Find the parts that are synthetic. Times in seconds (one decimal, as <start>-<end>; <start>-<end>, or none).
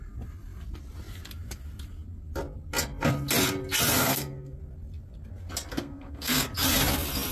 4.0-4.6; 5.7-6.5